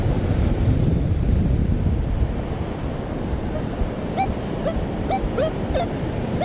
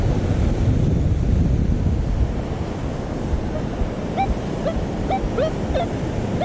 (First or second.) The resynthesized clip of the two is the first